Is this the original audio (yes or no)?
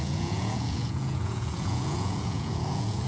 no